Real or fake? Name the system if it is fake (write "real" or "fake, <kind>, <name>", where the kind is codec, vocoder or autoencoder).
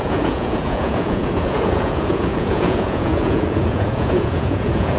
fake, vocoder, Vocos